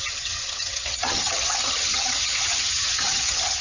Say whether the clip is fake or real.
fake